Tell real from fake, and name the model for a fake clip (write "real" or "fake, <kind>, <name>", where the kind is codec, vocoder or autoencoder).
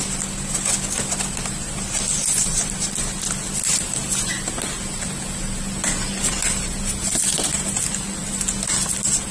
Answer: real